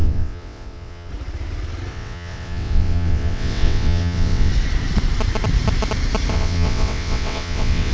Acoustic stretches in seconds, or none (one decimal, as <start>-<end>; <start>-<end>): 1.1-1.9; 4.5-6.3